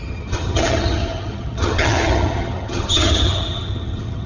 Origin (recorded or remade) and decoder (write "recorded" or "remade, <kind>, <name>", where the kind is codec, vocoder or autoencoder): remade, vocoder, HiFi-GAN